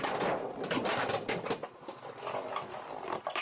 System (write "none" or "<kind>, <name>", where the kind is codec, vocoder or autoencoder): vocoder, BigVGAN v2